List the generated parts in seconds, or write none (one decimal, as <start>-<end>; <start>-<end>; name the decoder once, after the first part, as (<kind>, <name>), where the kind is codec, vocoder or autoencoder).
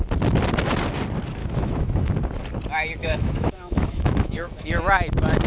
1.4-2.1 (autoencoder, DAC-VAE); 3.0-4.8